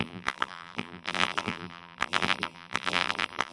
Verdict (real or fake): fake